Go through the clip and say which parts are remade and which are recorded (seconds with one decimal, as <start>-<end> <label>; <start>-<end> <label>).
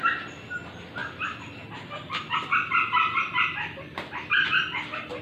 0.0-5.2 recorded